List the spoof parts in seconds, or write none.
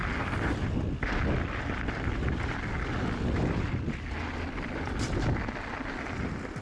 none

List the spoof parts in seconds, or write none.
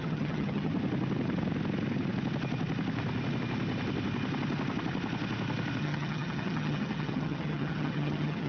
0.0-0.7 (vocoder, HiFi-GAN); 5.8-8.5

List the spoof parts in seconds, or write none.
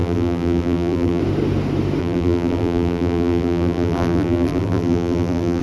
0.0-1.2 (vocoder, BigVGAN v2); 2.0-5.6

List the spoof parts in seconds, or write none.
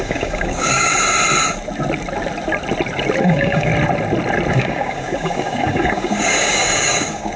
0.0-0.9 (codec, DAC); 3.2-3.7; 4.5-7.4